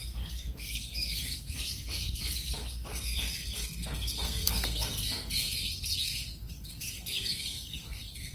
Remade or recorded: remade